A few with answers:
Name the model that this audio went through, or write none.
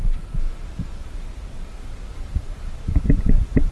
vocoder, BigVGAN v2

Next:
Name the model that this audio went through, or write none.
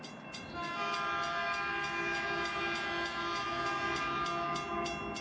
none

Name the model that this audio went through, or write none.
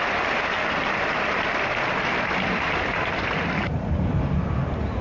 vocoder, BigVGAN v2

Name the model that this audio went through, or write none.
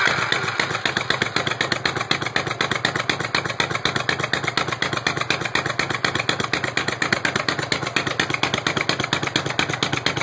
none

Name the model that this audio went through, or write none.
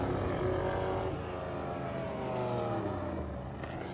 none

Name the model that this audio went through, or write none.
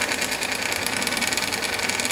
vocoder, BigVGAN v2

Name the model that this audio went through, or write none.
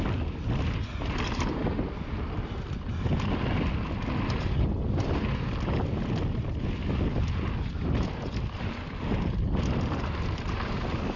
none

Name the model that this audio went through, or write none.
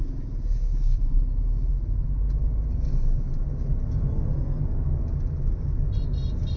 none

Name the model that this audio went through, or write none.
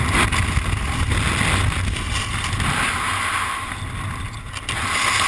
none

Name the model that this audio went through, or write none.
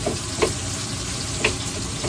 vocoder, BigVGAN v2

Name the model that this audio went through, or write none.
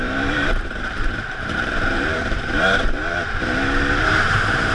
vocoder, BigVGAN v2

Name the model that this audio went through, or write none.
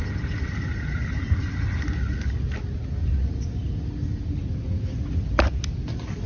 none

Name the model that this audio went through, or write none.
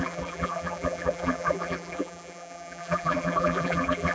vocoder, BigVGAN v2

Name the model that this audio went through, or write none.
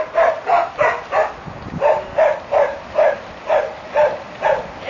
vocoder, BigVGAN v2